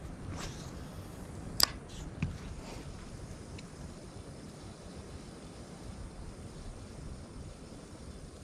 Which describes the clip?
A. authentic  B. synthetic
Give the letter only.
A